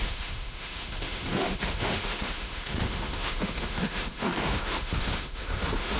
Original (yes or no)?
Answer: no